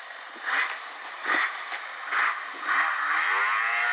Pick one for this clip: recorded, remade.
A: recorded